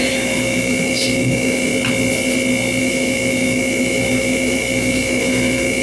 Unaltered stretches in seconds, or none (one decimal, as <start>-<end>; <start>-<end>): 1.7-2.8